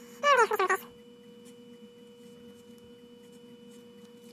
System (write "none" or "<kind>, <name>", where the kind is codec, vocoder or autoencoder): none